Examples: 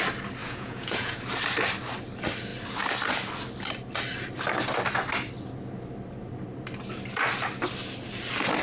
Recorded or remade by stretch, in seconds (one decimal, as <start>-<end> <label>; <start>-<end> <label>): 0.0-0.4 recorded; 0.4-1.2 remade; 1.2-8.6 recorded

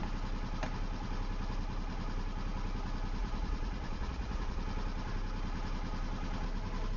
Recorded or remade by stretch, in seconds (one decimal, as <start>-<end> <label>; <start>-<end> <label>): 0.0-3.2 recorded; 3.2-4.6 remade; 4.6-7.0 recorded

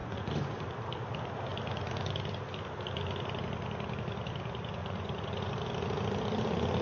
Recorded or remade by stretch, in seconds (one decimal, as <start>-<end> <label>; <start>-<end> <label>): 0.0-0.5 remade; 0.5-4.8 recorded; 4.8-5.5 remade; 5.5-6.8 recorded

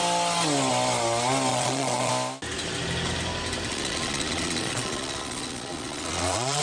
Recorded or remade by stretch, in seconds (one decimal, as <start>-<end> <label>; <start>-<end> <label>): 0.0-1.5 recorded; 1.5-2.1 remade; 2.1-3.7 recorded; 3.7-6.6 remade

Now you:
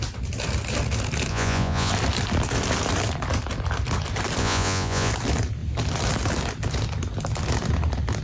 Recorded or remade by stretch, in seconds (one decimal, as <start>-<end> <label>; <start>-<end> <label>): 0.0-1.3 recorded; 1.3-1.9 remade; 1.9-4.4 recorded; 4.4-5.1 remade; 5.1-8.2 recorded

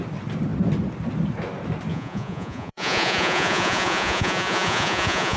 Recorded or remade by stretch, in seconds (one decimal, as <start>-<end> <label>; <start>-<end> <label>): 0.0-1.9 recorded; 1.9-5.4 remade

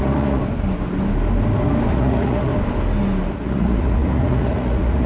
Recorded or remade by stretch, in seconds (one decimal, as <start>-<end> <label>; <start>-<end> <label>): 0.0-0.4 remade; 0.4-1.9 recorded; 1.9-2.5 remade; 2.5-3.3 recorded; 3.3-5.1 remade

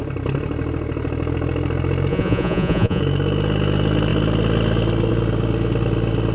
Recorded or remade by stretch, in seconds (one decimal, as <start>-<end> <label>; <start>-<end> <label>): 0.0-2.1 recorded; 2.1-3.0 remade; 3.0-6.3 recorded